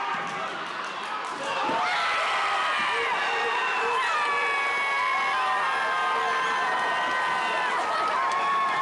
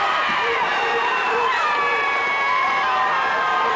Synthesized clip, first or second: second